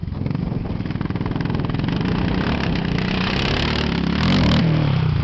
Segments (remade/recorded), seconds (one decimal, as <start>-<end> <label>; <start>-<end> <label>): 0.0-5.2 recorded